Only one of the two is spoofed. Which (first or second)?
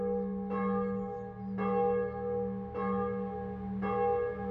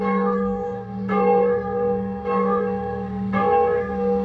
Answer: second